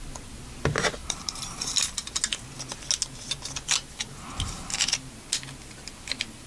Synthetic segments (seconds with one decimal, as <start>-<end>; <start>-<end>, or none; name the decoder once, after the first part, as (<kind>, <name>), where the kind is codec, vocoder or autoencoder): 1.0-1.6 (vocoder, BigVGAN v2)

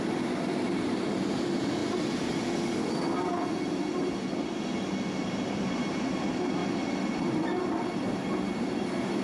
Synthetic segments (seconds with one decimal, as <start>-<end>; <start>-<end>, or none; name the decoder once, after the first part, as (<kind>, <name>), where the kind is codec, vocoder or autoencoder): 0.0-1.8 (vocoder, BigVGAN v2); 4.4-6.6; 7.2-9.2

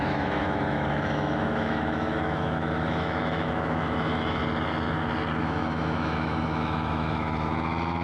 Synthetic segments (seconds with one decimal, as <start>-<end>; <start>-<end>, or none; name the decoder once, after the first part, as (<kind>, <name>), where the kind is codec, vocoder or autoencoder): 0.0-4.4 (autoencoder, DAC-VAE); 5.4-8.0

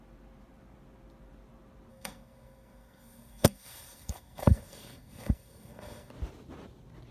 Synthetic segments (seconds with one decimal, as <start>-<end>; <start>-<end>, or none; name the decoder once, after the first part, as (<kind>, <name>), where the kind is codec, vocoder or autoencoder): 1.9-6.1 (codec, SNAC)

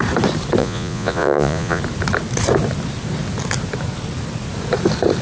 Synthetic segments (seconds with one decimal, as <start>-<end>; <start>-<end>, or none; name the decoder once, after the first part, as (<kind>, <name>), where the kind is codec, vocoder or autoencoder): 0.6-1.8 (vocoder, Vocos)

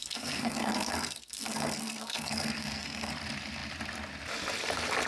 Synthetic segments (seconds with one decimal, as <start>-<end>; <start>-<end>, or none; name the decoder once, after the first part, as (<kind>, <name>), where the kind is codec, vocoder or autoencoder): 0.0-3.1 (codec, SNAC)

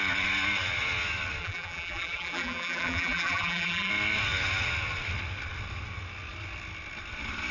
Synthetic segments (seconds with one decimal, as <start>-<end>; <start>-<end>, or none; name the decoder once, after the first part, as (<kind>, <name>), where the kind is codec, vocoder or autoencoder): 1.4-3.9 (vocoder, BigVGAN v2)